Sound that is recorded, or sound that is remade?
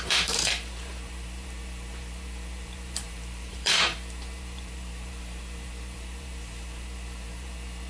remade